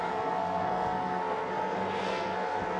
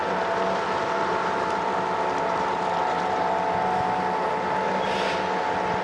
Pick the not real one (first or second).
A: first